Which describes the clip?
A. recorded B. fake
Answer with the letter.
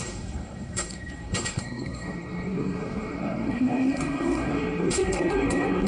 B